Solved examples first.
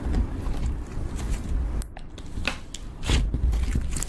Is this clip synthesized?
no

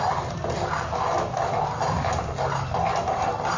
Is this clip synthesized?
no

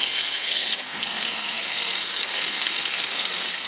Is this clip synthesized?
yes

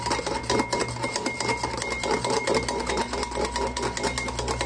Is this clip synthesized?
no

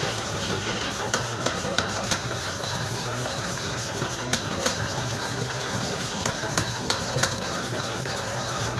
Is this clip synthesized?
yes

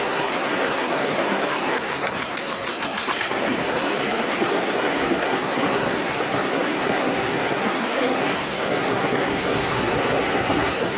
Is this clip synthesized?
yes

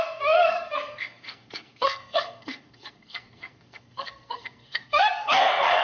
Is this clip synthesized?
yes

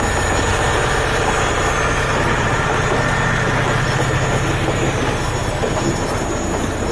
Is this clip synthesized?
no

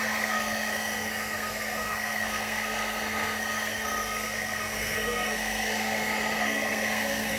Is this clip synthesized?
yes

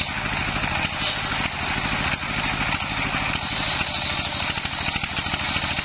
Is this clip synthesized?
no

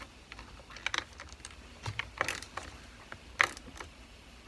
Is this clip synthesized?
no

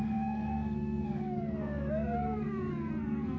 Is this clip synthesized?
yes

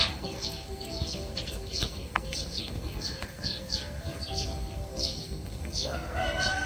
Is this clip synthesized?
yes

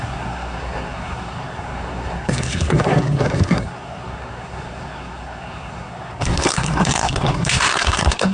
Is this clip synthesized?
yes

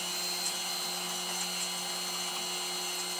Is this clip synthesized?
no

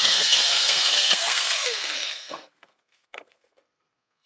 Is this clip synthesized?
yes